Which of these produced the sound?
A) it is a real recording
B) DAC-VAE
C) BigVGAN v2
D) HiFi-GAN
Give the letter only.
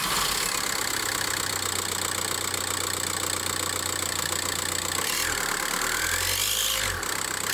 A